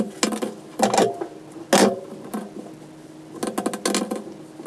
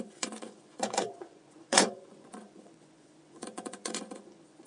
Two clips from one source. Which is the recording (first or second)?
first